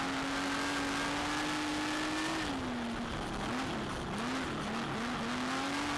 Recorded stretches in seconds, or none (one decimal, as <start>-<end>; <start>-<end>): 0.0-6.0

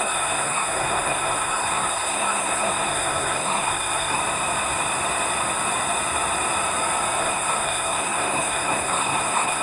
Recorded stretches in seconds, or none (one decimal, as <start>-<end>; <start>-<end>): 4.2-7.2

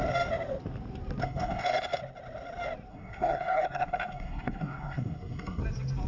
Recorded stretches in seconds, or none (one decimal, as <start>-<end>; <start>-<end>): 0.0-1.2; 2.0-2.9; 5.6-6.1

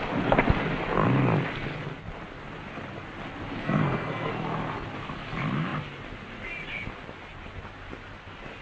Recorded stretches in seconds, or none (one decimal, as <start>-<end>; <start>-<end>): 0.0-3.6; 4.3-8.6

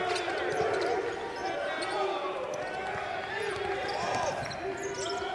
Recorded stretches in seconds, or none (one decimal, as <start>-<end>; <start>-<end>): 0.0-5.3

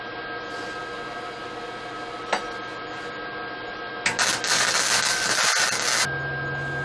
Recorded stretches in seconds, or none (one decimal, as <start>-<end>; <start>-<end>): 0.0-6.8